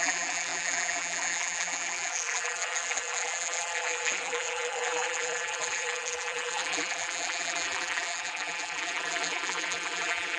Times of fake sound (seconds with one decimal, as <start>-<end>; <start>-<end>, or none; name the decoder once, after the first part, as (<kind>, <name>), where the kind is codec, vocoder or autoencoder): 0.0-10.4 (vocoder, BigVGAN v2)